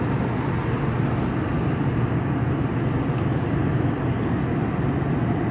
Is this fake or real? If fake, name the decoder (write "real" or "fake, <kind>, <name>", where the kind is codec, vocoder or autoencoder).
real